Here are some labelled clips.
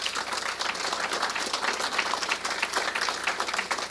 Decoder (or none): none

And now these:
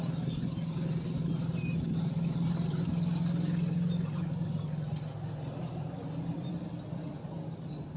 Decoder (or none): none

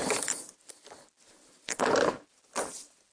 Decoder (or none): none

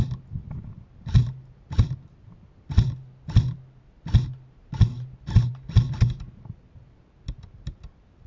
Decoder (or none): none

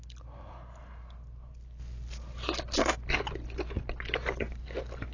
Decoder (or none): none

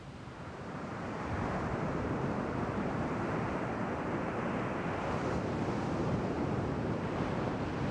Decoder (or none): vocoder, BigVGAN v2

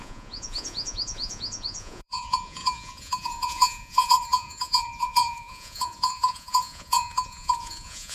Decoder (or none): vocoder, Vocos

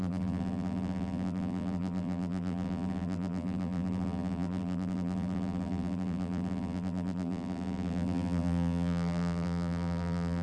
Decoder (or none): vocoder, BigVGAN v2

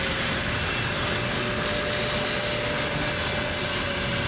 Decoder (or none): none